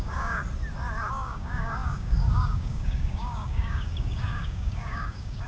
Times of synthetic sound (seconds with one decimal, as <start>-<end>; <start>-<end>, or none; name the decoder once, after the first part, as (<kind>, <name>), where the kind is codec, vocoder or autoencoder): 0.0-0.4 (codec, DAC); 1.1-5.5